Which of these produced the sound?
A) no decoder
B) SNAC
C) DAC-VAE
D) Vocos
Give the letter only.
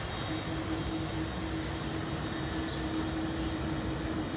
A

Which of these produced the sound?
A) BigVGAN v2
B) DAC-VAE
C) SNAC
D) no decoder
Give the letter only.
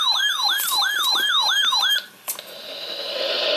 D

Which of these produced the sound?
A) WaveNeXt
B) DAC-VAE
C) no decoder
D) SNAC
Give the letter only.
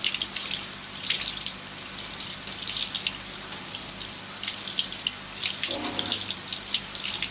C